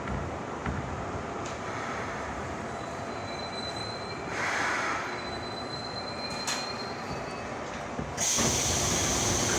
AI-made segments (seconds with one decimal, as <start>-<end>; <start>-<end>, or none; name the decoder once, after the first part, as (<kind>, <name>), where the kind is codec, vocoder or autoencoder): 0.6-3.3 (vocoder, BigVGAN v2)

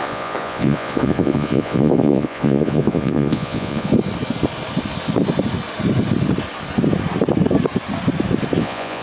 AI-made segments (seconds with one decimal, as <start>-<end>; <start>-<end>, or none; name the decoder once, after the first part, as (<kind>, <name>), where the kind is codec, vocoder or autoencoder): 0.0-3.9 (vocoder, Vocos); 8.6-9.0

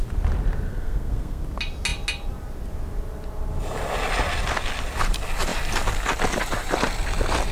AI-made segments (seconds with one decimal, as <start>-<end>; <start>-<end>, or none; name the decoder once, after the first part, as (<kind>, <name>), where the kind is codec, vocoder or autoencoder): 0.7-1.4 (codec, SNAC)

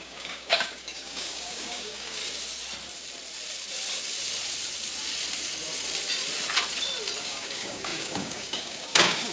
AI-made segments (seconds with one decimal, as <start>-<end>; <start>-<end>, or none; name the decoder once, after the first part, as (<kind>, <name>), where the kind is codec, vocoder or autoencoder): 0.0-2.2 (codec, DAC); 7.2-9.3

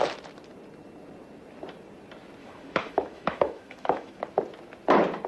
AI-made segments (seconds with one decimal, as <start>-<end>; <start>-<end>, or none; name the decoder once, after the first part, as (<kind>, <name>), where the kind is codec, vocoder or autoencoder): 2.4-4.2 (autoencoder, DAC-VAE)

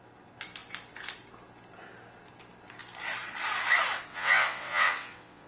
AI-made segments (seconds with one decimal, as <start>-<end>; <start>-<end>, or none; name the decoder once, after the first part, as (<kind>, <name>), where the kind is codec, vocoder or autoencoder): 4.1-5.5 (vocoder, WaveNeXt)